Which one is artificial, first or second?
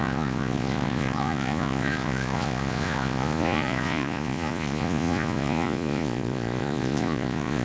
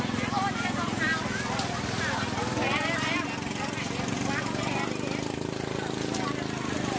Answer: first